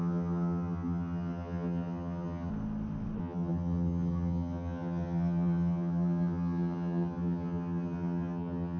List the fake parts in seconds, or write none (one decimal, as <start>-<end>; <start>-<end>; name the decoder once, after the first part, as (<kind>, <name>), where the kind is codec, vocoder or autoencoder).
0.0-2.5 (vocoder, HiFi-GAN); 3.2-8.8